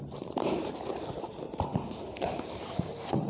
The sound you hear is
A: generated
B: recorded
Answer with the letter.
A